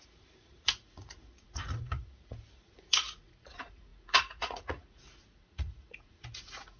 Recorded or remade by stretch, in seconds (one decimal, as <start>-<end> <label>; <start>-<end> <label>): 0.0-6.8 remade